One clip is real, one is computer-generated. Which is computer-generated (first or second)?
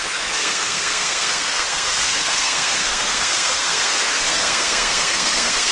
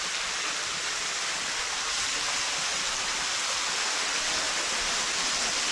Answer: first